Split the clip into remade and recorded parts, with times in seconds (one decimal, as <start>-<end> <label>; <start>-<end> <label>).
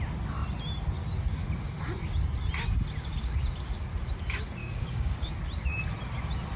0.0-4.6 recorded; 4.6-5.3 remade; 5.3-6.6 recorded